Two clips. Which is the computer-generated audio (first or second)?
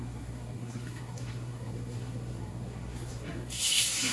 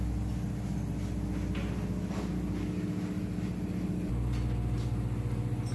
first